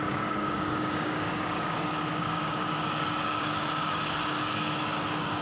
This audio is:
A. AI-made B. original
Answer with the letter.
A